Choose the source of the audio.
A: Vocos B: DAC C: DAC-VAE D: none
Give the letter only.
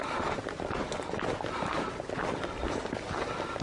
D